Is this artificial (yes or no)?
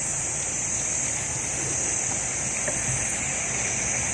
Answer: no